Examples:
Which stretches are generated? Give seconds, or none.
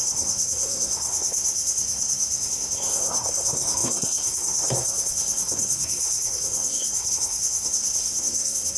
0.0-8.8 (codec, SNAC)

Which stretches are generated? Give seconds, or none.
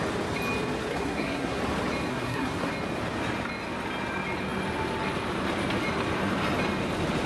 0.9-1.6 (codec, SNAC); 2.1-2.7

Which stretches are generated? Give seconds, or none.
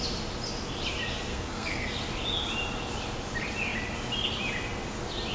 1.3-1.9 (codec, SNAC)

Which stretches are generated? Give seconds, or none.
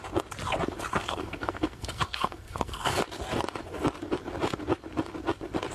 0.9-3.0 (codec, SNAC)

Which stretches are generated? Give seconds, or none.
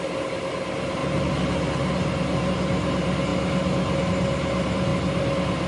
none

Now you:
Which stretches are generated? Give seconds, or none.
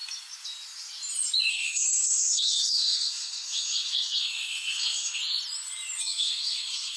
1.5-5.2 (codec, SNAC); 6.0-7.0